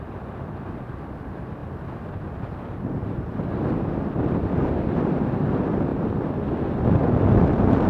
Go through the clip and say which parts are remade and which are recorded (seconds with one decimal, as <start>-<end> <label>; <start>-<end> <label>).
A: 0.0-7.9 remade